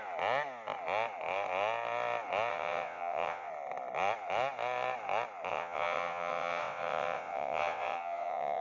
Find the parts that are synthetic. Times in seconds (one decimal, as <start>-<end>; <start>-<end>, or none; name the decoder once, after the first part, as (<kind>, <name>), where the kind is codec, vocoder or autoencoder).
2.5-3.5 (vocoder, WaveNeXt); 5.5-8.6